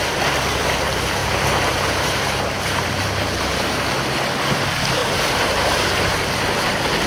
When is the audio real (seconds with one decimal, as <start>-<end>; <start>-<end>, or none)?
0.0-1.2; 4.0-5.0; 6.0-7.1